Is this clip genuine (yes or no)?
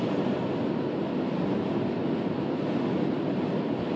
yes